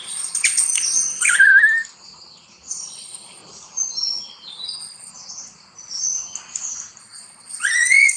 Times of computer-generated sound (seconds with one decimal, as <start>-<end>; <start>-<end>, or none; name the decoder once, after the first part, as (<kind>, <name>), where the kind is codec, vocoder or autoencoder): 0.0-1.5 (vocoder, Vocos); 2.7-3.4; 4.5-5.1; 7.0-8.2